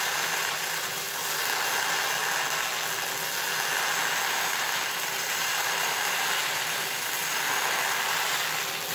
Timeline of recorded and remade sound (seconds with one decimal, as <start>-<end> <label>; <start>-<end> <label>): 0.0-1.2 remade; 1.2-4.3 recorded; 4.3-7.2 remade; 7.2-8.9 recorded